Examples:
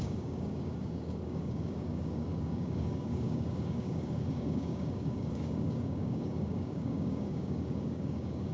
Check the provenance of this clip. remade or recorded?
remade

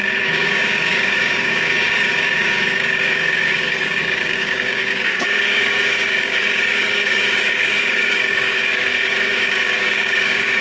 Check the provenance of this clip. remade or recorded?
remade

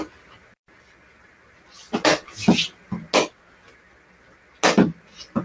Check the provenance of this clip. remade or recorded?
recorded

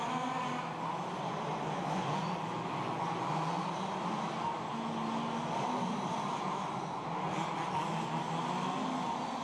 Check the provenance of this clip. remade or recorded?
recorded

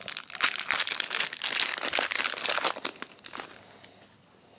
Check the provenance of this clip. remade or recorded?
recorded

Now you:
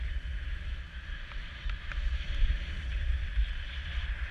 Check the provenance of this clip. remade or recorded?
recorded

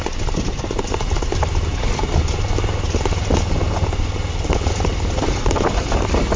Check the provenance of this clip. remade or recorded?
recorded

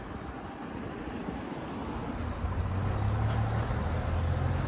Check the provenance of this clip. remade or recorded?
recorded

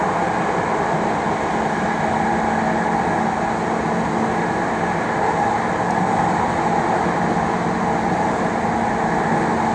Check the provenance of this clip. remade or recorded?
recorded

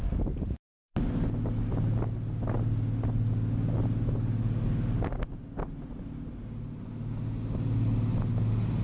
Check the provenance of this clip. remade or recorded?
recorded